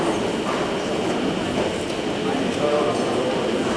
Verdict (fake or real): real